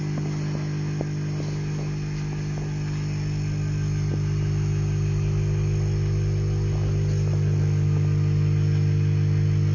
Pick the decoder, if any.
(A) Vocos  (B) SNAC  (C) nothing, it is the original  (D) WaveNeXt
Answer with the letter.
C